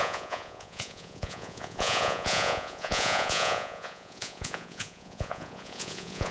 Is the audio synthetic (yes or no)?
yes